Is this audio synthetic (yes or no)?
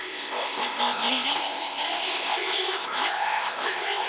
yes